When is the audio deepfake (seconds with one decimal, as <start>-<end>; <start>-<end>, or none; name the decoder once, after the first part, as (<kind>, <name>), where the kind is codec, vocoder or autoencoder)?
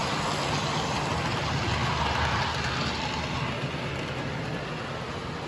none